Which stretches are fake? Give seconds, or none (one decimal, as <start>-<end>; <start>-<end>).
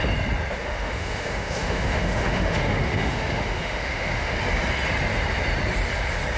0.6-4.4